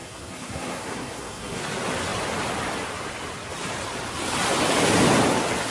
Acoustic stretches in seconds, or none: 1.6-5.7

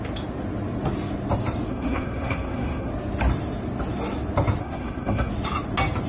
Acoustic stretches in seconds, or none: 0.0-1.7; 2.9-4.6; 5.3-6.1

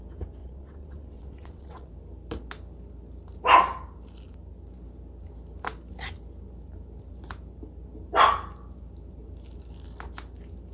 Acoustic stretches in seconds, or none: 0.0-0.4; 1.9-10.7

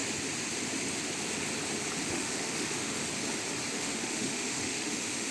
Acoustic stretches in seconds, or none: 0.0-2.1; 3.0-3.7

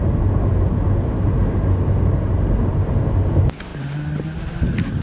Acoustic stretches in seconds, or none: 0.0-5.0